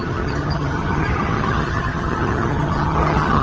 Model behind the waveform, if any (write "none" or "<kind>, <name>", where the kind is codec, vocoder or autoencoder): vocoder, HiFi-GAN